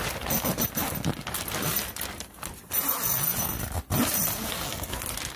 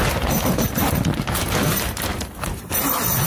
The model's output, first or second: second